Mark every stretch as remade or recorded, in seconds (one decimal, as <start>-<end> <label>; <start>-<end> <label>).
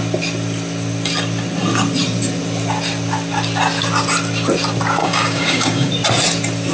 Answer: 0.0-5.0 recorded; 5.0-5.9 remade; 5.9-6.7 recorded